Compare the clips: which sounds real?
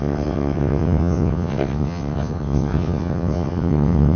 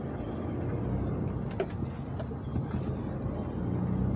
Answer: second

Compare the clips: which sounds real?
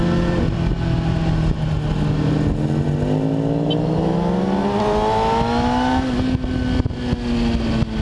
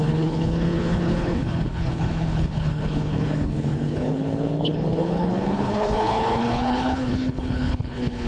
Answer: first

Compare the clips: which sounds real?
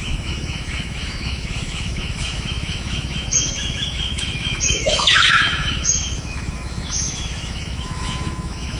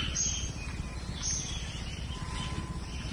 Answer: second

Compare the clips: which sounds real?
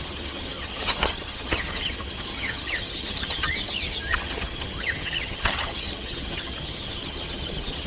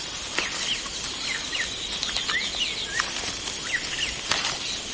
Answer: second